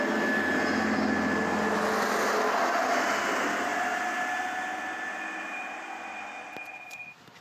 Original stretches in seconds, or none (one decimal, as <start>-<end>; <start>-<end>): 0.0-7.4